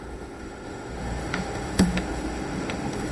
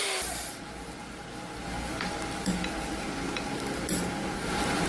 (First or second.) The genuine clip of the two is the second